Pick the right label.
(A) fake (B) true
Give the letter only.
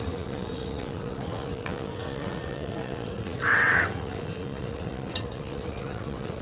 A